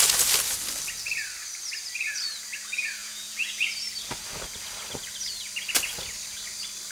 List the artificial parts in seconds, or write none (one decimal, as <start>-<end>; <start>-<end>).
3.0-3.7